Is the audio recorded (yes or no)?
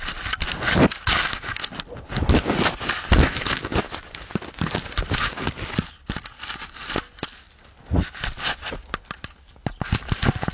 yes